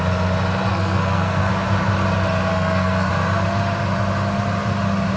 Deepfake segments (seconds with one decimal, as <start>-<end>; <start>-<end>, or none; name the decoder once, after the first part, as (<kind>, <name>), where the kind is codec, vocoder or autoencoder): 0.7-1.5 (codec, SNAC); 2.5-3.1